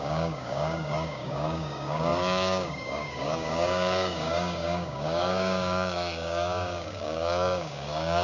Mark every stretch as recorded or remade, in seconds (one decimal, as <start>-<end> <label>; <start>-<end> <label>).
0.0-8.2 remade